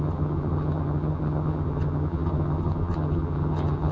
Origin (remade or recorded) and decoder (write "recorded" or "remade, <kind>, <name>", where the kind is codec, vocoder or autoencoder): remade, vocoder, HiFi-GAN